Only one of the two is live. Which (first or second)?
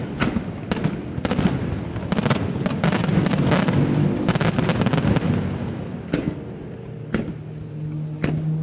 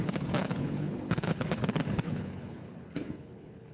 first